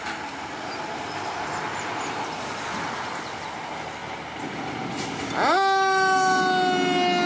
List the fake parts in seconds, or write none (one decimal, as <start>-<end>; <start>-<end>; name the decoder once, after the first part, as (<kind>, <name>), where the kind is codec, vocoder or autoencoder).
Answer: none